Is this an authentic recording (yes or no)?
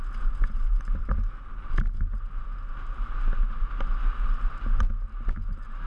yes